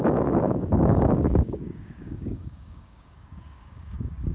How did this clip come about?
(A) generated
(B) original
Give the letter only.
A